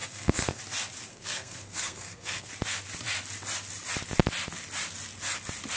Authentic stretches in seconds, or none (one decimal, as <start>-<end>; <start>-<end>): 0.6-1.1; 2.5-5.8